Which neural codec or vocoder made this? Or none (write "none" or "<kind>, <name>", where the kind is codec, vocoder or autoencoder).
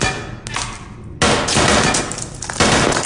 none